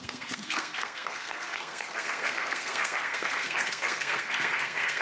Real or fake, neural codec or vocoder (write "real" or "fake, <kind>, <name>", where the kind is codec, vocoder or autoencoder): fake, codec, SNAC